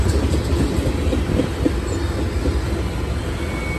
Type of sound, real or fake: real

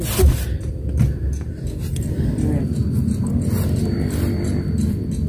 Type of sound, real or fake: real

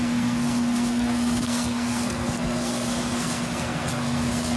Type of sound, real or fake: fake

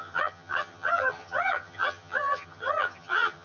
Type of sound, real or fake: fake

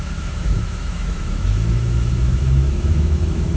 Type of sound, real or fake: fake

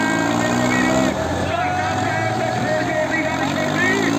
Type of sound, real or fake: real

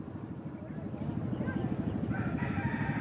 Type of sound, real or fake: real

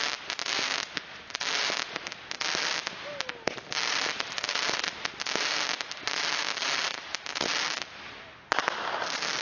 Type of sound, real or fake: real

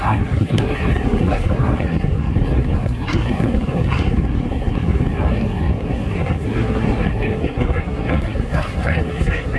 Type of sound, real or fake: fake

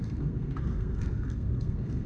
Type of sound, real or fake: fake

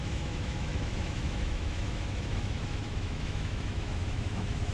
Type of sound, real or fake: fake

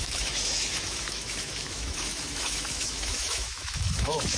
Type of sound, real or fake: fake